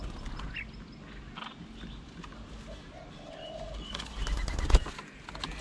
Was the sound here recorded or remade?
recorded